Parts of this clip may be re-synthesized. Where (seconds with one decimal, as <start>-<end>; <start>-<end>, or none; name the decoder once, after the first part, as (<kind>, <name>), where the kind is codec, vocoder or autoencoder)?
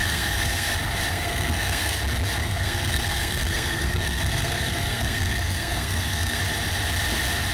0.0-0.7 (codec, SNAC); 1.1-2.0; 2.4-6.4